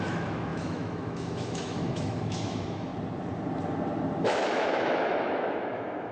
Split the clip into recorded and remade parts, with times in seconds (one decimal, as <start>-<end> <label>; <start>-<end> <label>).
0.0-2.9 remade; 2.9-4.2 recorded; 4.2-6.1 remade